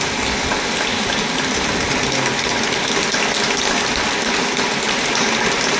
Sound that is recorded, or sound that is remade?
recorded